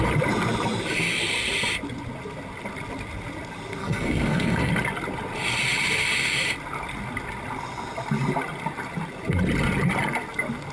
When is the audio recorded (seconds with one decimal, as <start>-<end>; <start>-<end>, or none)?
0.0-3.8; 4.7-10.7